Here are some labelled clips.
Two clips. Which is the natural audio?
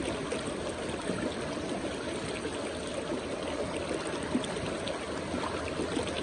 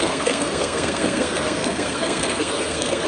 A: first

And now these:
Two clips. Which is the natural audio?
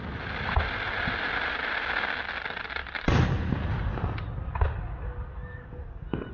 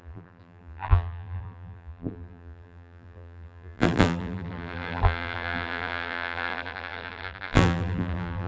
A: first